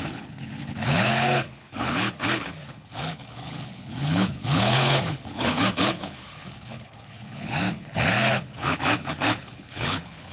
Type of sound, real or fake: fake